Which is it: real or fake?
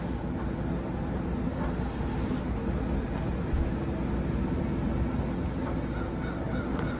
real